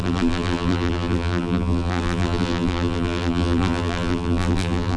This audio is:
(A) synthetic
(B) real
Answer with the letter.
A